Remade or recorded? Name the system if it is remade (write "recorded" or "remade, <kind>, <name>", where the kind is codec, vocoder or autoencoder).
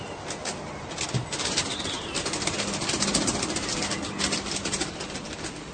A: recorded